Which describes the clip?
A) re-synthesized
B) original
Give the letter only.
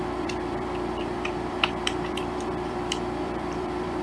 A